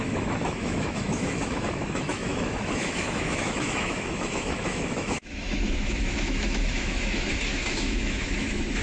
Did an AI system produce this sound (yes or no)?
yes